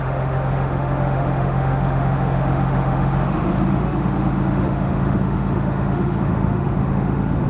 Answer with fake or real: fake